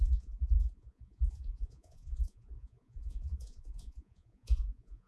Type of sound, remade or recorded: remade